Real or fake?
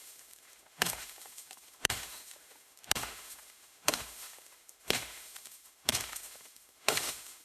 fake